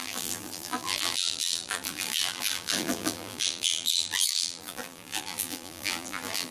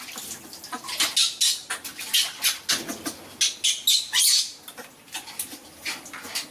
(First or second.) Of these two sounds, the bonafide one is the second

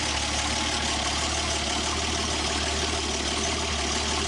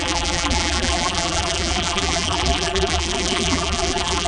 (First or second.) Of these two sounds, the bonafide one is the first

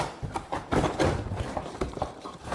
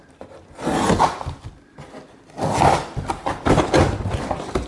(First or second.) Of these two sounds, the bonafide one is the second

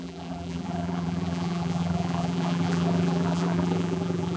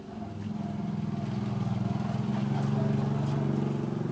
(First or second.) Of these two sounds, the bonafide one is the second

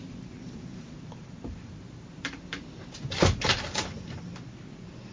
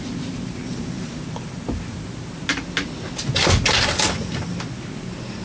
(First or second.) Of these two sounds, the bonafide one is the second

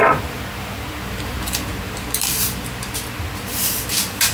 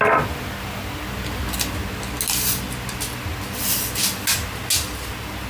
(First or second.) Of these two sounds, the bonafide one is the second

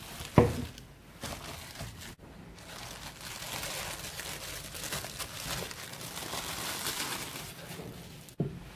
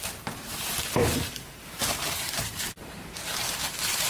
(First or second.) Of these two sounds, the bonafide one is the first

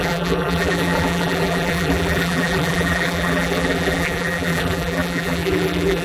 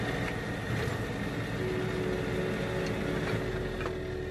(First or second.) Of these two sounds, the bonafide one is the second